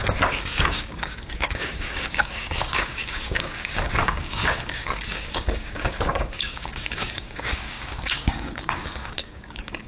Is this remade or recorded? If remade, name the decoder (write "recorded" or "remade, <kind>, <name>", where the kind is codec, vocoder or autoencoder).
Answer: remade, codec, DAC